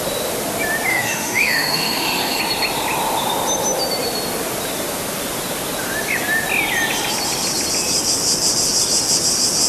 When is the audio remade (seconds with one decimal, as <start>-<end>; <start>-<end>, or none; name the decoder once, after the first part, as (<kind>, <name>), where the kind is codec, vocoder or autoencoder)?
0.9-2.4 (autoencoder, DAC-VAE)